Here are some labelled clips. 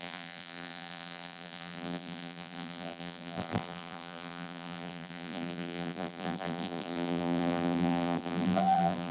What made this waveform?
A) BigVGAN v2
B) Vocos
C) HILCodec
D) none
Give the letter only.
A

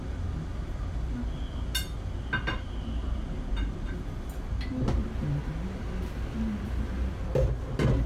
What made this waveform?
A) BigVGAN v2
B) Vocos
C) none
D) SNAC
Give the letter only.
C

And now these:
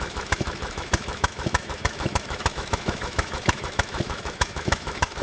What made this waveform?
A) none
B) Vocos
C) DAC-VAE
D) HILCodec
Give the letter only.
C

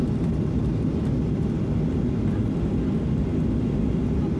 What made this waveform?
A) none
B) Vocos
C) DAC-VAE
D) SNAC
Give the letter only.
A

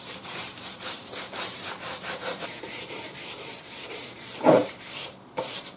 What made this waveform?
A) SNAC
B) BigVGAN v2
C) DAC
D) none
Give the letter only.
B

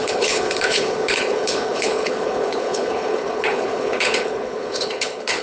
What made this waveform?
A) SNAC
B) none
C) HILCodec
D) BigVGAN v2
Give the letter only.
C